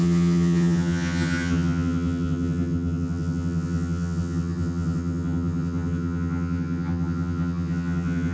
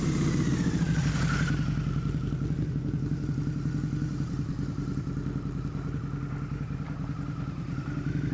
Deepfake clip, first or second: first